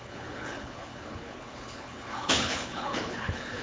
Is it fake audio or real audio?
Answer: fake